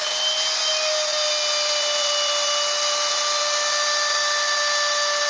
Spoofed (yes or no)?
no